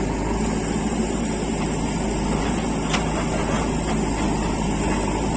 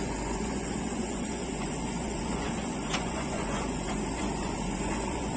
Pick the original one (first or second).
first